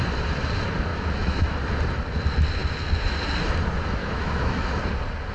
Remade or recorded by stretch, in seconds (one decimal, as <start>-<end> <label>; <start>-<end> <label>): 0.0-0.9 recorded; 0.9-1.6 remade; 1.6-4.0 recorded; 4.0-4.7 remade; 4.7-5.3 recorded